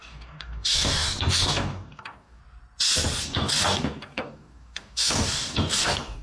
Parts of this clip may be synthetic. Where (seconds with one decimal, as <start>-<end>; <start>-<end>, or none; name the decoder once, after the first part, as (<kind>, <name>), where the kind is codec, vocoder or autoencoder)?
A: 0.0-2.4 (codec, DAC); 3.2-6.2